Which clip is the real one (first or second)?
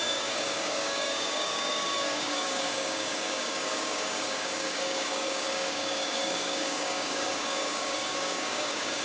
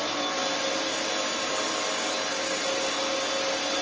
second